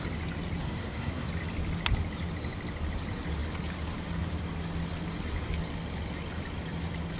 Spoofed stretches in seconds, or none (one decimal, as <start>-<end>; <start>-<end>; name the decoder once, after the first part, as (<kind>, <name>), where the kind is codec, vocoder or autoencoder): 0.6-1.3 (codec, SNAC)